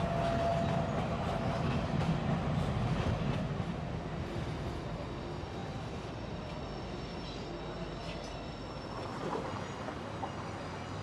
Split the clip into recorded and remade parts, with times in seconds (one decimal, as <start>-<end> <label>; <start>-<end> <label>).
0.0-5.6 recorded; 5.6-6.4 remade; 6.4-11.0 recorded